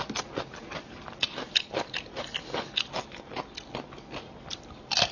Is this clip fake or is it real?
real